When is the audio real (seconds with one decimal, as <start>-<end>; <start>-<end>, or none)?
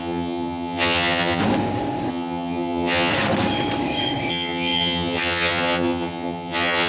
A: 1.4-2.1; 3.1-4.3